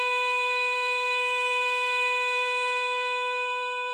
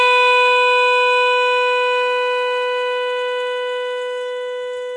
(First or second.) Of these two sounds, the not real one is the first